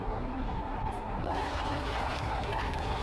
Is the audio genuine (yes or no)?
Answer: no